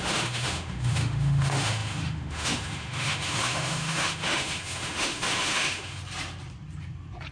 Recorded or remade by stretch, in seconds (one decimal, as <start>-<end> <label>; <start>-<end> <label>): 0.0-6.0 remade; 6.0-7.3 recorded

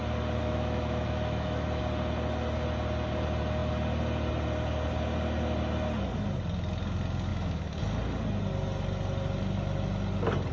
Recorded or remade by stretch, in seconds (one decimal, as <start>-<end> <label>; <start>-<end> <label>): 0.0-0.4 recorded; 0.4-1.8 remade; 1.8-7.3 recorded; 7.3-7.8 remade; 7.8-10.5 recorded

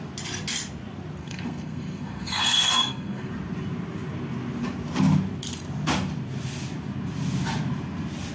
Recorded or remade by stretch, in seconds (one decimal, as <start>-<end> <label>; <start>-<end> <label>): 0.0-1.2 recorded; 1.2-3.3 remade; 3.3-8.3 recorded